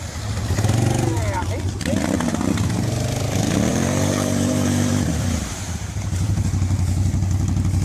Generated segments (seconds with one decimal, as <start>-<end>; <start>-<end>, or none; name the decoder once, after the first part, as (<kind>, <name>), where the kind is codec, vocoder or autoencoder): 3.7-6.4 (vocoder, BigVGAN v2)